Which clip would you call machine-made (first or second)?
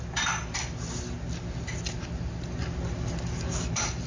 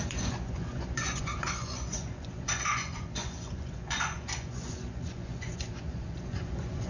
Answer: second